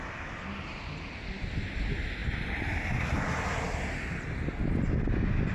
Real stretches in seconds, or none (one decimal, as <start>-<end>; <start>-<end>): 0.0-5.5